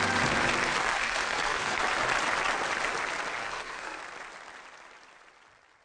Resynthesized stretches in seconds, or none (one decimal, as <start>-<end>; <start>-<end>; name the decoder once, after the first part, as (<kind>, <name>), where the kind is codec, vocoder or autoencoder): 0.9-1.8 (codec, SNAC); 3.4-4.0